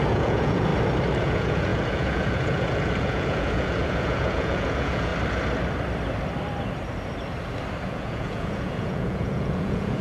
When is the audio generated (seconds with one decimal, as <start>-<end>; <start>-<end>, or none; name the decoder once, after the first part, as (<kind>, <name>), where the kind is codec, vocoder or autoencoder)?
0.0-0.7 (vocoder, Vocos); 1.2-5.1; 7.9-10.0